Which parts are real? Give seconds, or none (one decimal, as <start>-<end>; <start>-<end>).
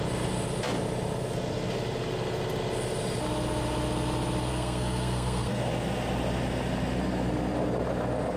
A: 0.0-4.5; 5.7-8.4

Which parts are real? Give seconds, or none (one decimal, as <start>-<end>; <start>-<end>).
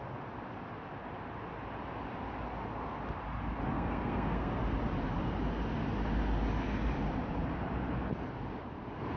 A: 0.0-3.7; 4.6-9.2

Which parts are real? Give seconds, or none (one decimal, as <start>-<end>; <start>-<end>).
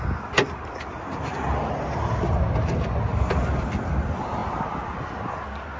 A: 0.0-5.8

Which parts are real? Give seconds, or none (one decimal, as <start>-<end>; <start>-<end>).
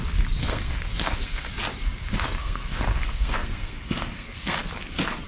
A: 0.0-0.4; 1.5-2.4; 4.7-5.3